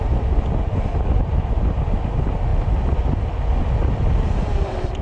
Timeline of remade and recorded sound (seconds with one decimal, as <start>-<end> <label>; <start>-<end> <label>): 0.0-5.0 recorded